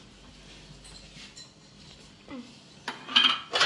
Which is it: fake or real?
real